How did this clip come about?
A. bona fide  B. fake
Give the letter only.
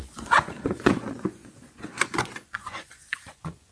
B